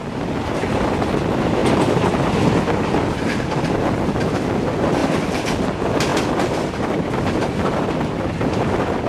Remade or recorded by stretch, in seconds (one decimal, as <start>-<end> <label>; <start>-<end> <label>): 0.0-9.1 recorded